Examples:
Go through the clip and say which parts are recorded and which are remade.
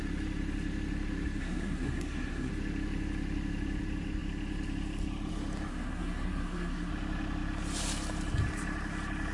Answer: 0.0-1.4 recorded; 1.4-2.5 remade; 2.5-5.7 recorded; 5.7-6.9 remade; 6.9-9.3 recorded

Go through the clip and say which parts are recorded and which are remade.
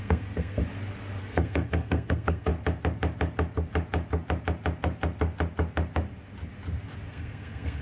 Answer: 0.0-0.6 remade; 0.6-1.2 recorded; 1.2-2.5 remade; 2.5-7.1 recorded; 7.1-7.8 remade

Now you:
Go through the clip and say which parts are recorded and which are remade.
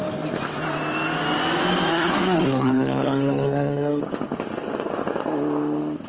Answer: 0.0-1.9 recorded; 1.9-4.0 remade; 4.0-6.1 recorded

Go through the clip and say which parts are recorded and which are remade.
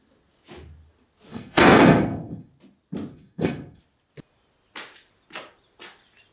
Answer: 0.0-1.3 recorded; 1.3-2.5 remade; 2.5-3.1 recorded; 3.1-3.8 remade; 3.8-6.3 recorded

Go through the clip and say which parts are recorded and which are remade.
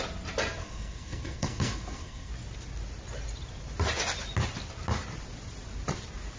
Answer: 0.0-0.6 recorded; 0.6-2.3 remade; 2.3-6.4 recorded